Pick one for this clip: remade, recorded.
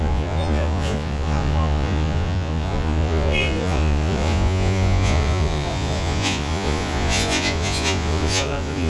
remade